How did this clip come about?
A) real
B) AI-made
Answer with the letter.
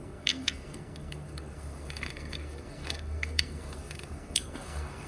B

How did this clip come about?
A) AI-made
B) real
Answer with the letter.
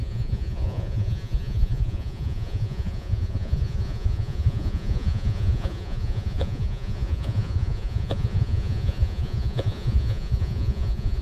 A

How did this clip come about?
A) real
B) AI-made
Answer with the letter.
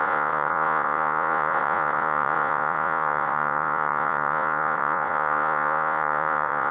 B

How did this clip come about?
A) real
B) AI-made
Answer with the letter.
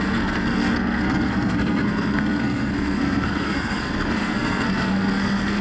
B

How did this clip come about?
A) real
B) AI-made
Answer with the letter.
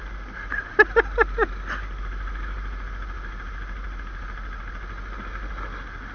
A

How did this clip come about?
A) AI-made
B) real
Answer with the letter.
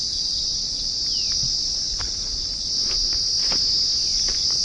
B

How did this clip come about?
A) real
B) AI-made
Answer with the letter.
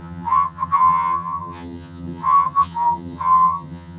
B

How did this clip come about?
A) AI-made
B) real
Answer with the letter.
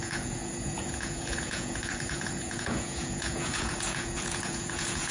A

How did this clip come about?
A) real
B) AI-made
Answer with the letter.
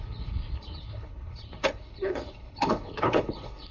B